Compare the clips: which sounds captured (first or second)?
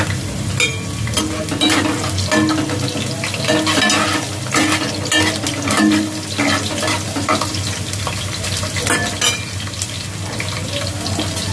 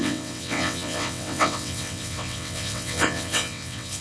first